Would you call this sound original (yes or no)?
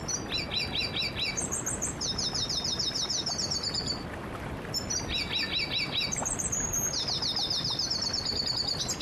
yes